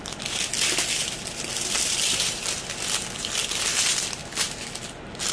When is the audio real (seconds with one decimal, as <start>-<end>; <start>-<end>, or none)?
0.0-5.3